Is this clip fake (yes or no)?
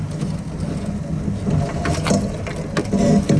no